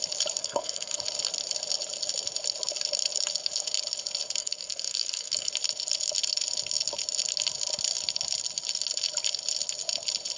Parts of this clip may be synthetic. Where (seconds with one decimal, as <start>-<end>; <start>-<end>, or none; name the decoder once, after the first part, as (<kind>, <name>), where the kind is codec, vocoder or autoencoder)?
0.4-1.0 (codec, SNAC); 4.4-5.5